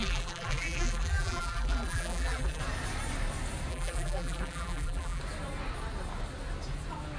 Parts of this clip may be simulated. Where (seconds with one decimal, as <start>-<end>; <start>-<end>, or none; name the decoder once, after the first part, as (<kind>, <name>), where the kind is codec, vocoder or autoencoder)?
0.0-2.6 (vocoder, BigVGAN v2); 3.7-5.2